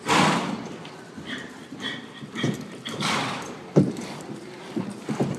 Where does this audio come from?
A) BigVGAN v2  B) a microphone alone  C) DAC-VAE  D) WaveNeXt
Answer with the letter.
A